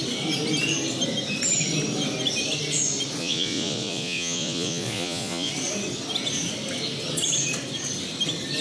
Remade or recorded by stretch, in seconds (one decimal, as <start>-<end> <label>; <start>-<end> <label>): 0.0-3.2 recorded; 3.2-5.5 remade; 5.5-8.6 recorded